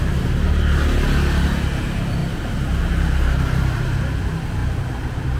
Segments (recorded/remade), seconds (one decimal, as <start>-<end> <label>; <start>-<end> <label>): 0.0-2.2 recorded; 2.2-3.8 remade; 3.8-4.6 recorded; 4.6-5.4 remade